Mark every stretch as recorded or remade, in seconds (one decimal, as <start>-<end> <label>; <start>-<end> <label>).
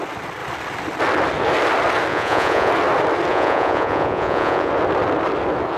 0.0-2.1 recorded; 2.1-2.7 remade; 2.7-3.3 recorded; 3.3-4.7 remade; 4.7-5.8 recorded